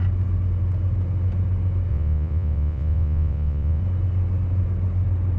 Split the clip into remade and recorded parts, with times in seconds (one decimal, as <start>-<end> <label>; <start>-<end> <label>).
0.0-1.9 recorded; 1.9-3.8 remade; 3.8-5.4 recorded